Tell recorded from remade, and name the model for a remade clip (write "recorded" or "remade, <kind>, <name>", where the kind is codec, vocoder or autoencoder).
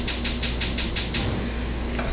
recorded